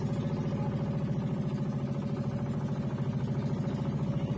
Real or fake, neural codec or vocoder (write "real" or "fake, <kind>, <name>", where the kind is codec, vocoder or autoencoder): real